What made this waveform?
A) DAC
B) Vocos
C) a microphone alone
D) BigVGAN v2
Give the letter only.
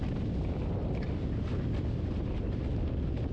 C